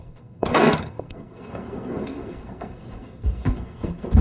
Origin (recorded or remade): remade